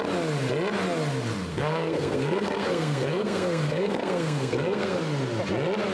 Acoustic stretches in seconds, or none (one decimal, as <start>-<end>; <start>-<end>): 0.0-1.5; 5.0-5.9